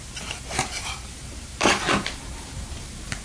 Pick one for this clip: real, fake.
fake